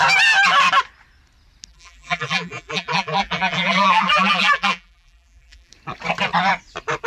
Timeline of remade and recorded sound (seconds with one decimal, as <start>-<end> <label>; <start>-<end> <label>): 0.0-1.7 recorded; 1.7-5.7 remade; 5.7-7.1 recorded